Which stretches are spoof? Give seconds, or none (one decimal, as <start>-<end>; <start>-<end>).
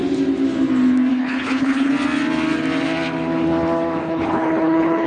1.1-1.9; 4.0-5.1